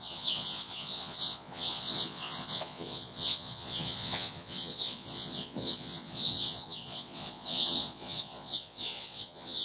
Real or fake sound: fake